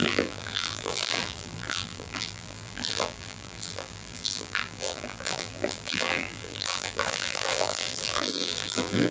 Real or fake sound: fake